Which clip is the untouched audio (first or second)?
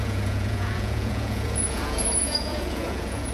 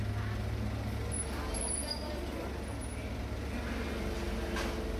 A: second